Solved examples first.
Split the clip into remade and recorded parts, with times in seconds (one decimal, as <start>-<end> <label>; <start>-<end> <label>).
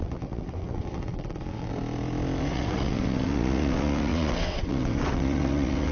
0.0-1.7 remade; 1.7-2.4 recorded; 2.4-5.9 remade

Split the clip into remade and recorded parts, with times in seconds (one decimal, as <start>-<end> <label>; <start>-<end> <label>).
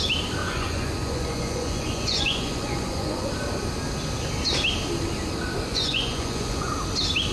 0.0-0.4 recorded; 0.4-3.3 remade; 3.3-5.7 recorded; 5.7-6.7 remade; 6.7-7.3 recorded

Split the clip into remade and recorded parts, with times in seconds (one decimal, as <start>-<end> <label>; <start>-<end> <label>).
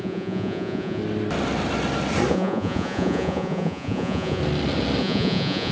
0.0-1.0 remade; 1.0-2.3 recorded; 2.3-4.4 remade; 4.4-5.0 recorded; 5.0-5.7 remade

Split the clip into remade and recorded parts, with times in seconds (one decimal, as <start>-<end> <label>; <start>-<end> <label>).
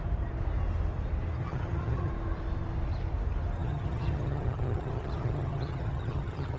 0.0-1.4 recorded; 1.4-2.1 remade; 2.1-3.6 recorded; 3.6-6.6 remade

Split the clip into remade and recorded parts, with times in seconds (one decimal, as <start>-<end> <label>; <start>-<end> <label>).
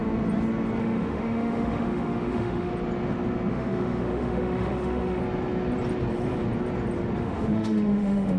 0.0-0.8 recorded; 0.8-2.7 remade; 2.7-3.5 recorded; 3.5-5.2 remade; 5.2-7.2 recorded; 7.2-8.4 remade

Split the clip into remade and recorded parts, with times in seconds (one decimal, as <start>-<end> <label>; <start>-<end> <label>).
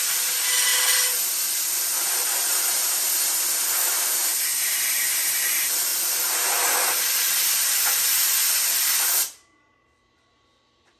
0.0-0.7 recorded; 0.7-3.9 remade; 3.9-4.3 recorded; 4.3-4.8 remade; 4.8-5.9 recorded; 5.9-9.0 remade; 9.0-11.0 recorded